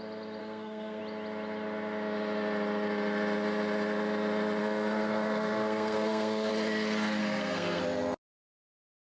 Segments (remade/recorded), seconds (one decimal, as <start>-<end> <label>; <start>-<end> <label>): 0.0-0.4 recorded; 0.4-1.0 remade; 1.0-4.6 recorded; 4.6-6.5 remade; 6.5-7.2 recorded; 7.2-7.8 remade; 7.8-9.1 recorded